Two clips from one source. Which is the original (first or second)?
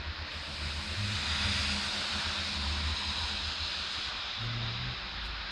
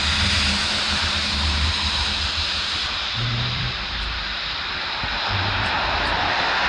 first